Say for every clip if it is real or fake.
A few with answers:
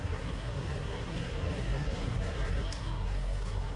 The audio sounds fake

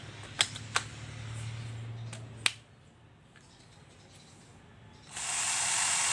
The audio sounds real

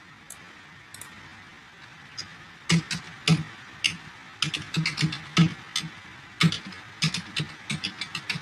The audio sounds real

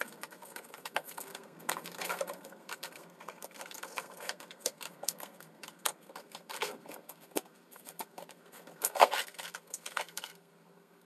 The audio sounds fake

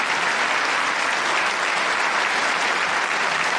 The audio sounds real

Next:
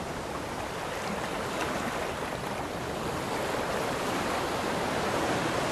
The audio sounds real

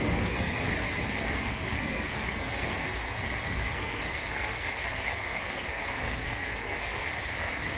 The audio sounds fake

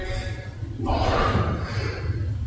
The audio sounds real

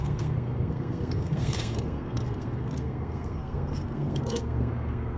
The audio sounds fake